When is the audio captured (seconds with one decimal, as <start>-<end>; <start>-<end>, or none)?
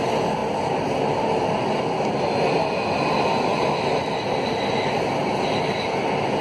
0.0-6.4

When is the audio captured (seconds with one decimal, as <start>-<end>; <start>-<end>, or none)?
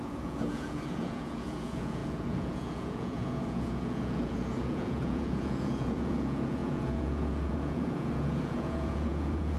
none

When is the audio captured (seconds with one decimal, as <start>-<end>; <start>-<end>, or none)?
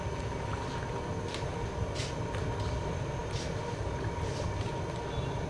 0.0-5.5